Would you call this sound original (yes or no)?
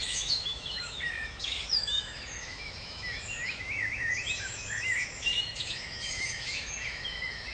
no